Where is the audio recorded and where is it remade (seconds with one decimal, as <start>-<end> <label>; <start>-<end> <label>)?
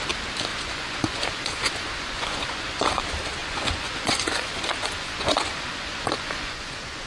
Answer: 0.0-0.5 recorded; 0.5-3.0 remade; 3.0-3.4 recorded; 3.4-7.1 remade